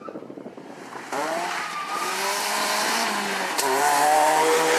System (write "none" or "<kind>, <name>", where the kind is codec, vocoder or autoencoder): vocoder, BigVGAN v2